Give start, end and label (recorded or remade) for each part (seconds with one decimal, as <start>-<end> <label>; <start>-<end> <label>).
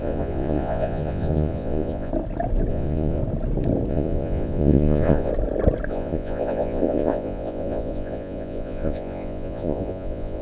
0.0-2.1 remade; 2.1-2.7 recorded; 2.7-3.2 remade; 3.2-3.9 recorded; 3.9-5.3 remade; 5.3-5.9 recorded; 5.9-10.4 remade